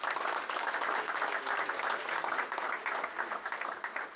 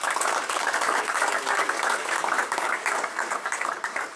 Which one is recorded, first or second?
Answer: first